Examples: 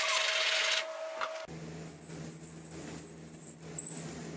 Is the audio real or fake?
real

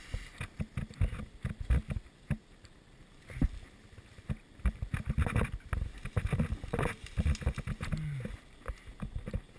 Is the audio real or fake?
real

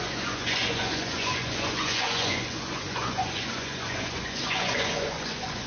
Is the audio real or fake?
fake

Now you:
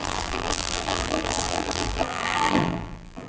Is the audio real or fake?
fake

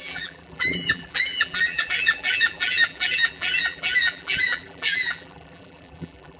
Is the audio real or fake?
fake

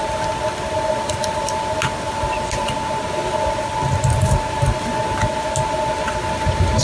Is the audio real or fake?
real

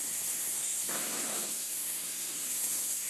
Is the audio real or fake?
fake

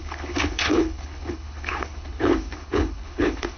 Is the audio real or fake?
fake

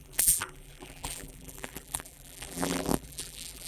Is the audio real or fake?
fake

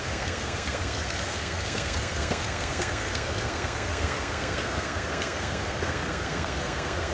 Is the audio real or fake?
fake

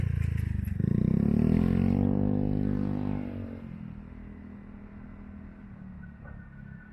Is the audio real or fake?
real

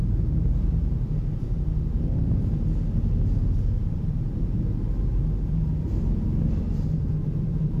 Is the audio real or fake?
fake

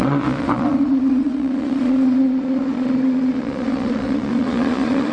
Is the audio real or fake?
fake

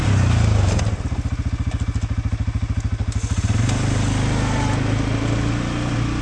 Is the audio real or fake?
real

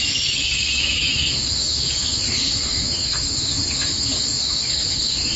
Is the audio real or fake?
fake